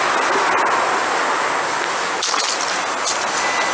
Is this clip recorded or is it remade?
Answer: recorded